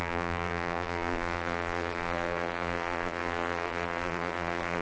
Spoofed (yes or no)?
yes